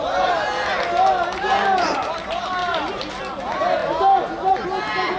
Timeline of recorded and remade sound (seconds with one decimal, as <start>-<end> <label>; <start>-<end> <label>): 0.0-5.2 recorded